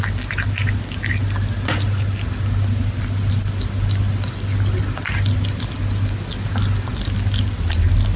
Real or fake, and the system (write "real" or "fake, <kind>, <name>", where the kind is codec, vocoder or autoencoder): real